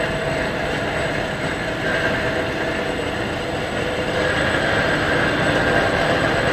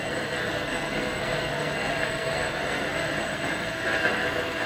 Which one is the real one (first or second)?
first